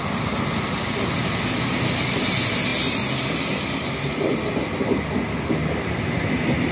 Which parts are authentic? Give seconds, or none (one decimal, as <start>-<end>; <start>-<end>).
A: 0.0-6.7